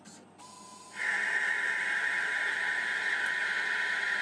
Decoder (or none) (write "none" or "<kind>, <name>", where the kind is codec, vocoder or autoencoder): none